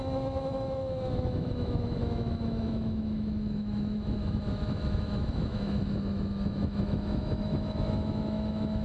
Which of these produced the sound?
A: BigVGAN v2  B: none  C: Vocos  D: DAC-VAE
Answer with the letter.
D